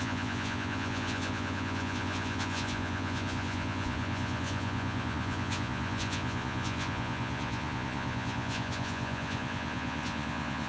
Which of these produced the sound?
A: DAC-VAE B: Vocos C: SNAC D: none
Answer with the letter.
B